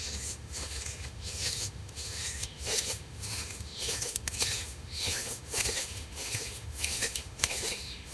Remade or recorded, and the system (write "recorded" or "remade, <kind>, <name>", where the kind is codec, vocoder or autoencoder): remade, autoencoder, DAC-VAE